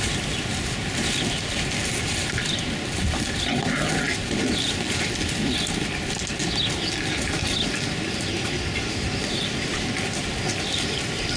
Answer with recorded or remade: remade